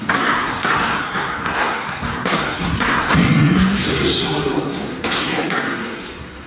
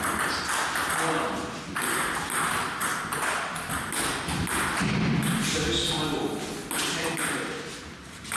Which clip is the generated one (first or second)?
first